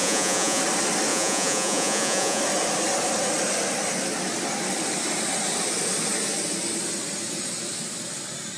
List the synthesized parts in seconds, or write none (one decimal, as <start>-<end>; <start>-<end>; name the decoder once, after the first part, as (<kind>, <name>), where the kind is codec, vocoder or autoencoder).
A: 0.0-0.6 (vocoder, Vocos); 1.1-2.4